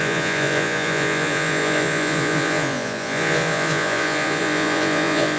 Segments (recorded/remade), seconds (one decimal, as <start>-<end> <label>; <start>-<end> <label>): 0.0-5.4 remade